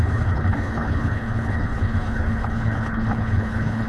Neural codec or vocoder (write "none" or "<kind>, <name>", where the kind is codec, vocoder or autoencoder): codec, HILCodec